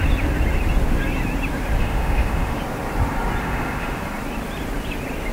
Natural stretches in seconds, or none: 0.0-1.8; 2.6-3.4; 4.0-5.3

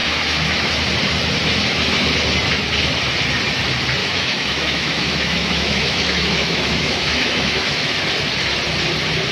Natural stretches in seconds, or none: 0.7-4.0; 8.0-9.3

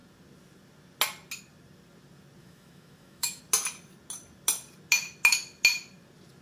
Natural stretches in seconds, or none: 0.0-2.4; 3.4-6.4

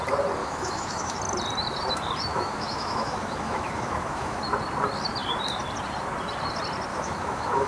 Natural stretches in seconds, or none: 0.0-0.4; 1.2-2.3; 4.4-6.9

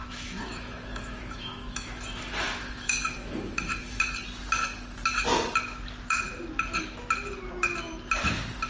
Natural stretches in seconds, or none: 4.0-8.7

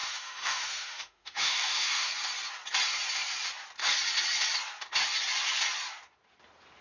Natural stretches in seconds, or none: 2.1-6.8